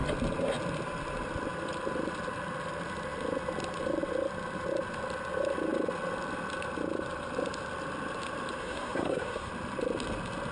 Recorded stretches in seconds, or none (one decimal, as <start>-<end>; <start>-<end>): 0.0-8.6; 9.5-10.5